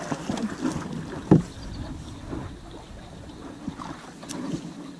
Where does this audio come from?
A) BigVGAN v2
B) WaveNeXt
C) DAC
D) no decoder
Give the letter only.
D